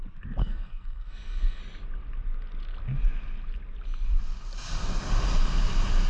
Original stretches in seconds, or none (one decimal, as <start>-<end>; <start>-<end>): 0.0-0.4; 1.6-6.1